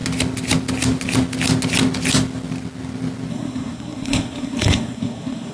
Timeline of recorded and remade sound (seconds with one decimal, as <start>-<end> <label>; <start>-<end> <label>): 0.0-3.3 recorded; 3.3-5.5 remade